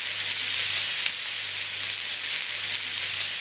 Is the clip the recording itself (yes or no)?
yes